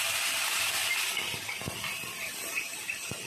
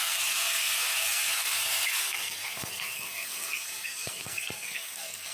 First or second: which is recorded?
first